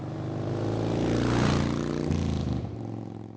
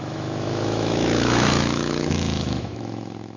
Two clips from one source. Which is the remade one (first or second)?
second